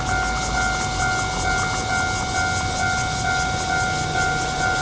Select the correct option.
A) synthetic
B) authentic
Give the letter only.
B